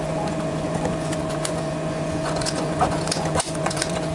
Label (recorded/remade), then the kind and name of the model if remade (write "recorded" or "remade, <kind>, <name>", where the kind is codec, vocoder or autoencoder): remade, vocoder, Vocos